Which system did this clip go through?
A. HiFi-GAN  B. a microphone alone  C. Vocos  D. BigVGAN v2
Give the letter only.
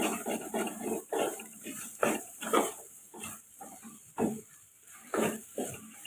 D